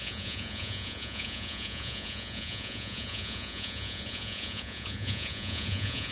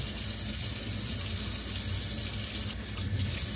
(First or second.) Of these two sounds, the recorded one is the second